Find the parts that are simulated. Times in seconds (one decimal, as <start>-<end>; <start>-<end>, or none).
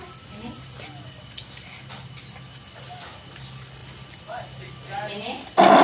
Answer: none